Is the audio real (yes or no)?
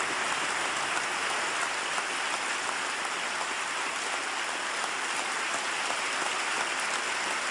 yes